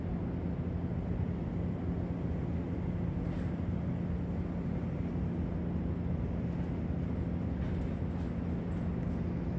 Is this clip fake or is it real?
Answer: real